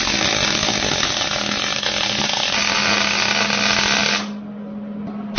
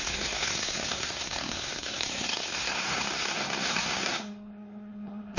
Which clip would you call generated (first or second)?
second